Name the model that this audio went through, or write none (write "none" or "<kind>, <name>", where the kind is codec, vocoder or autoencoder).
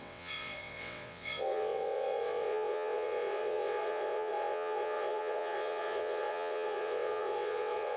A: vocoder, WaveNeXt